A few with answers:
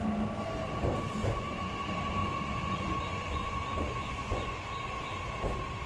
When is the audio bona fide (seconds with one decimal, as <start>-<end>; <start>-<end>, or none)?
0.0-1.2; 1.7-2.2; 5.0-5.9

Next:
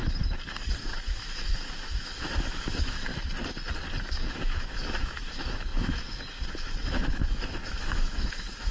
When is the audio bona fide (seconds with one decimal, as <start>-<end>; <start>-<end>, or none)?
0.0-0.8; 3.1-4.0

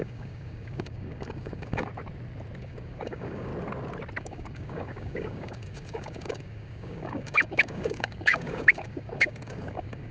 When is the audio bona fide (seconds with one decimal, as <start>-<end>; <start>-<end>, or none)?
1.9-2.6; 3.5-4.2